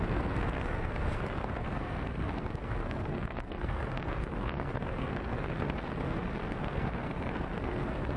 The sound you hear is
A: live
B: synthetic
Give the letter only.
B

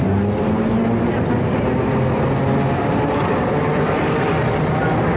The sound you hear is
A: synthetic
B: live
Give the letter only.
B